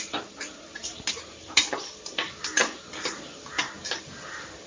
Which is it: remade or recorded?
remade